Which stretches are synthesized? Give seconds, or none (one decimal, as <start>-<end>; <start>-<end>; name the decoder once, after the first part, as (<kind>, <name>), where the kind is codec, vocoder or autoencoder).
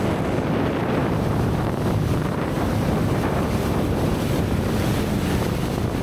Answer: 1.0-3.7 (vocoder, BigVGAN v2)